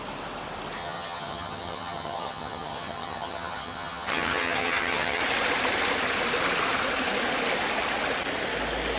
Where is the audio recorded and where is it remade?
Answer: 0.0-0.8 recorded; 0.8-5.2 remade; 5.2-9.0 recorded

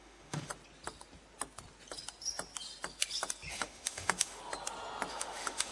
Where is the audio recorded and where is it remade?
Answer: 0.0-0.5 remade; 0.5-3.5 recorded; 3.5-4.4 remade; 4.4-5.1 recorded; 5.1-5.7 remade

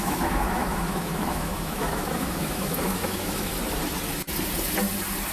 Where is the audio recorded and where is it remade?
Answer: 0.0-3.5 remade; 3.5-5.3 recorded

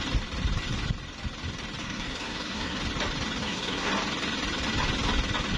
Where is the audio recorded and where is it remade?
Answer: 0.0-1.8 recorded; 1.8-2.8 remade; 2.8-3.4 recorded; 3.4-3.9 remade; 3.9-5.6 recorded